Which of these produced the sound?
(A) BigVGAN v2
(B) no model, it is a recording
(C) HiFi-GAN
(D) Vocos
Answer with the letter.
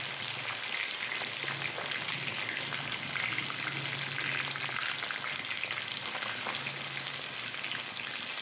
B